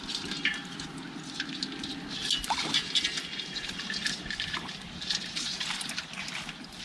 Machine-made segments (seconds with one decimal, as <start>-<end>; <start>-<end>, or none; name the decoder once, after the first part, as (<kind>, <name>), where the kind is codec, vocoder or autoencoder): none